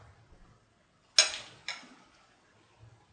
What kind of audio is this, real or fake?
real